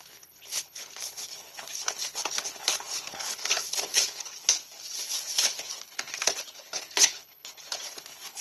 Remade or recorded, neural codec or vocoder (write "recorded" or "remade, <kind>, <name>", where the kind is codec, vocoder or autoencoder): remade, codec, HILCodec